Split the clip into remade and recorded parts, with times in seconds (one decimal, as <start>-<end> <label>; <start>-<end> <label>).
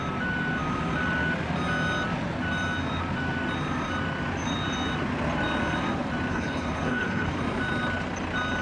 0.0-6.3 recorded; 6.3-7.3 remade; 7.3-8.6 recorded